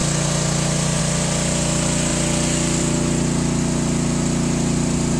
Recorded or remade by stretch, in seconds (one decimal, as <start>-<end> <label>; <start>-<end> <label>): 0.0-5.2 recorded